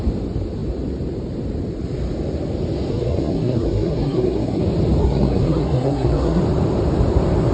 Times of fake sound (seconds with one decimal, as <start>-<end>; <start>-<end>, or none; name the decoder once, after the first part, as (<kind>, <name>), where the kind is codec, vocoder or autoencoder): 2.9-4.6 (codec, SNAC); 5.0-6.4